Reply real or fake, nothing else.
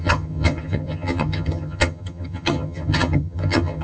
fake